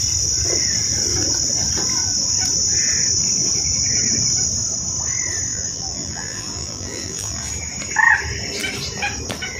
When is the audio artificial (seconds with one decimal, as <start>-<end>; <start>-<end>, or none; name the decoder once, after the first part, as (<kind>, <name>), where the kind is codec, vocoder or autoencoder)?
5.5-7.5 (vocoder, BigVGAN v2)

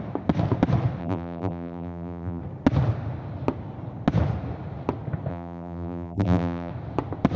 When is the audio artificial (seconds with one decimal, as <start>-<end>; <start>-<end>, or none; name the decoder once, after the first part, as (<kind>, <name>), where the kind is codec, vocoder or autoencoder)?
1.0-2.4 (vocoder, BigVGAN v2); 5.3-6.7

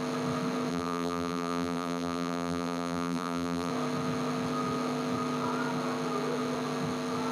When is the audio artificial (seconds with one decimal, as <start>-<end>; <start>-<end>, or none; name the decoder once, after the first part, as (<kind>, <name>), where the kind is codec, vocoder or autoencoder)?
0.7-3.7 (vocoder, BigVGAN v2)

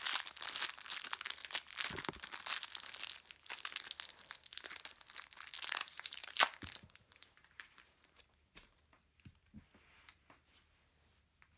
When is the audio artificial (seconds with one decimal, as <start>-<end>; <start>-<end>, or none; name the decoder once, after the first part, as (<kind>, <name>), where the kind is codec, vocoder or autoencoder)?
5.8-9.6 (vocoder, BigVGAN v2)

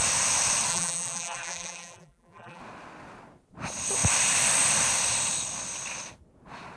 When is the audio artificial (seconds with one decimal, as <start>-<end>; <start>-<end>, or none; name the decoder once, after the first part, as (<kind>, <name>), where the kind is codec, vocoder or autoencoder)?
0.7-2.6 (vocoder, BigVGAN v2)

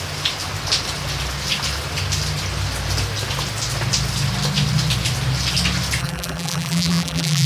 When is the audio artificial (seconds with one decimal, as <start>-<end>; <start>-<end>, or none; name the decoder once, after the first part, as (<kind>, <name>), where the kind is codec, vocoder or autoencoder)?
6.0-7.5 (vocoder, BigVGAN v2)

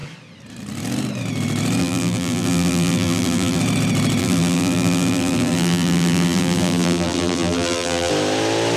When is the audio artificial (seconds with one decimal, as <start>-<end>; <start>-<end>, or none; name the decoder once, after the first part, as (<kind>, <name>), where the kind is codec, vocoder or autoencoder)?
1.8-3.6 (vocoder, BigVGAN v2); 4.2-8.1

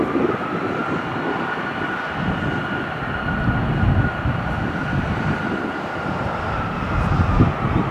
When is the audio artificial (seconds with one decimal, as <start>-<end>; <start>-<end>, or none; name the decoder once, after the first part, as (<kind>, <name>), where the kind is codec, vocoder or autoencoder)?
0.0-7.9 (vocoder, BigVGAN v2)